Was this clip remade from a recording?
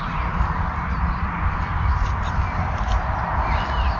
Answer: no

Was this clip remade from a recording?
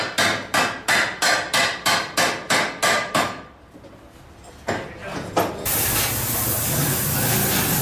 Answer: no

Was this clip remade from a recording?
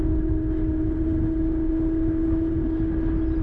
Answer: no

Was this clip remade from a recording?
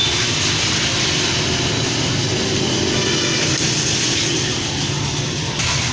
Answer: no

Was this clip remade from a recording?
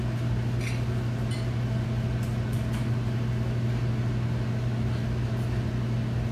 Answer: no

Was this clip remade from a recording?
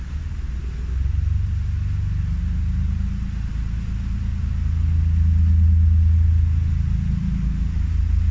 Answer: no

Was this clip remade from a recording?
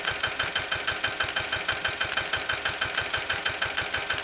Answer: no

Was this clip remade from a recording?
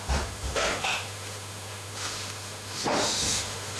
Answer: yes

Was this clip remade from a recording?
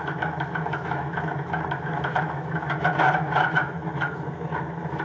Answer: yes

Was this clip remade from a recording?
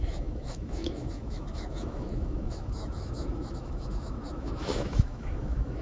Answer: yes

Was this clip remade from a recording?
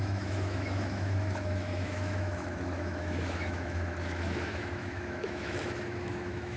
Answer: yes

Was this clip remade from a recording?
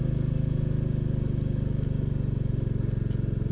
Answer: no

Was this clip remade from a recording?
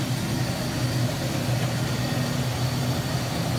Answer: no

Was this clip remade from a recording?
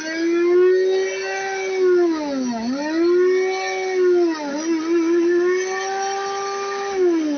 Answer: no